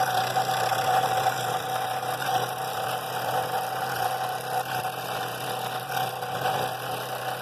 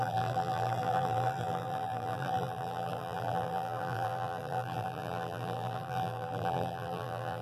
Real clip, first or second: first